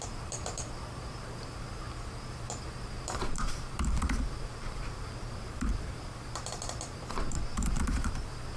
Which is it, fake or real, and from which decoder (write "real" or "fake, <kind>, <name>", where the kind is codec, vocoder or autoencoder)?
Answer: fake, vocoder, BigVGAN v2